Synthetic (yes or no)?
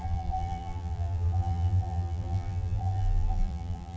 yes